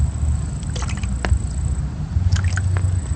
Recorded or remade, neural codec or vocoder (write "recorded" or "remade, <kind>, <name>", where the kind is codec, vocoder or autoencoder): recorded